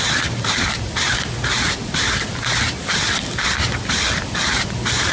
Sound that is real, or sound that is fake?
real